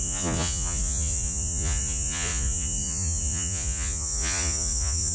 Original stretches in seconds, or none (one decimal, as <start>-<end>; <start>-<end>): none